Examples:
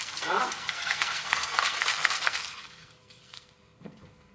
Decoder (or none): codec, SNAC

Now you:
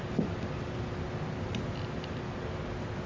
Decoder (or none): none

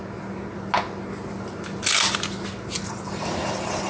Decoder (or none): none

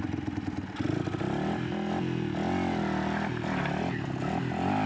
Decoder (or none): none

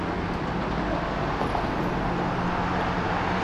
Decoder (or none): none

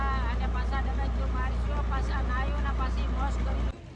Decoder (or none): none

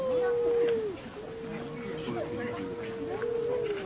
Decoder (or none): none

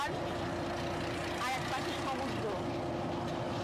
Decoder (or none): none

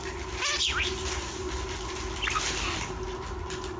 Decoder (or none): none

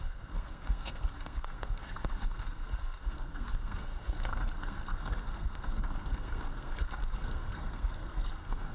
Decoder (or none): codec, SNAC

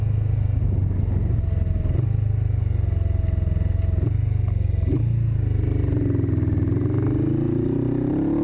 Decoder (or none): none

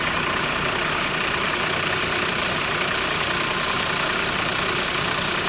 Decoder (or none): none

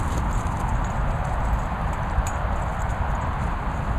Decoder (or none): none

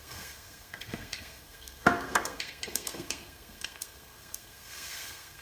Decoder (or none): codec, SNAC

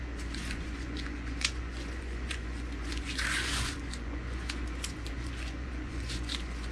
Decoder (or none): vocoder, Vocos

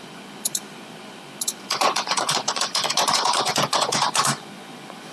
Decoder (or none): vocoder, Vocos